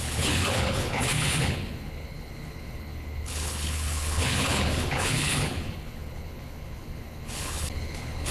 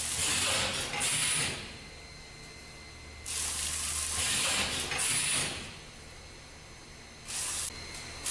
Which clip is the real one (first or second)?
second